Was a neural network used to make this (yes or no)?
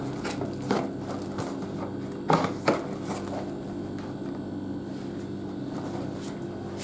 no